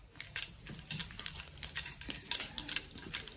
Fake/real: real